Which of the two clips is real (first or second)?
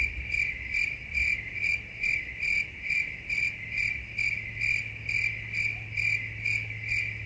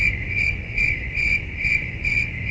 first